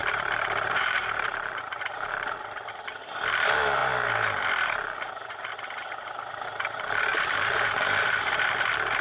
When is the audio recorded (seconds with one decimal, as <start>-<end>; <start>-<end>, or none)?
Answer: 2.1-7.1; 8.3-9.0